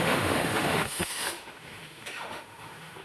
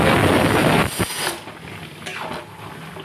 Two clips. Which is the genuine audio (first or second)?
second